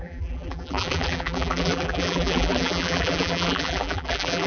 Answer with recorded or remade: remade